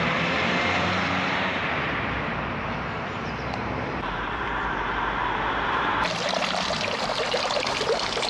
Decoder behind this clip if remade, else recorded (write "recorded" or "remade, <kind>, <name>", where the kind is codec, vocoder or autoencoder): remade, vocoder, BigVGAN v2